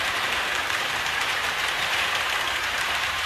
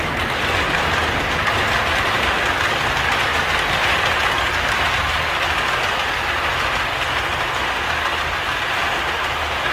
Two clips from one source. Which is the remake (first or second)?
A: first